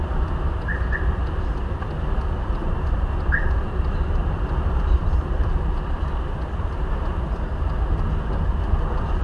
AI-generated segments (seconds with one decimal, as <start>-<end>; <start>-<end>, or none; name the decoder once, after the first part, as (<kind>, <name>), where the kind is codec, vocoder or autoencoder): 0.7-1.9 (vocoder, BigVGAN v2); 2.6-7.8